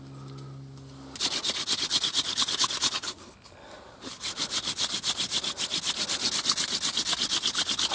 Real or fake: real